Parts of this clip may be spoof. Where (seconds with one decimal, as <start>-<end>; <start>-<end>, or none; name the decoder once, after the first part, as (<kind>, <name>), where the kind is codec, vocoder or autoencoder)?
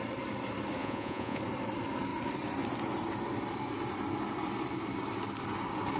0.8-1.4 (vocoder, Vocos)